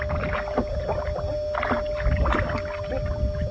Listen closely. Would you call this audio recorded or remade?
recorded